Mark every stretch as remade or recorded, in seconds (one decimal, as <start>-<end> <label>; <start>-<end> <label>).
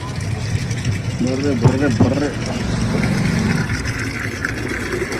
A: 0.0-0.6 recorded; 0.6-1.2 remade; 1.2-5.2 recorded